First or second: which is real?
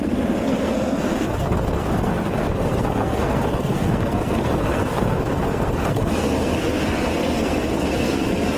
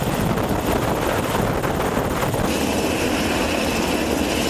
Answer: second